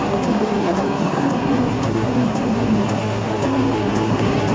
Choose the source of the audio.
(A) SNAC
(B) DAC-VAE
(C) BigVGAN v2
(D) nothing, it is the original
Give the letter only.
A